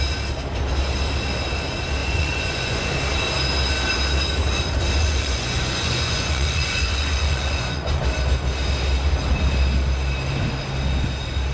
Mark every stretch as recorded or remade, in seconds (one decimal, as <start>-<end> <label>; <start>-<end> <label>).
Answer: 0.0-2.0 recorded; 2.0-2.9 remade; 2.9-5.0 recorded; 5.0-8.0 remade; 8.0-11.5 recorded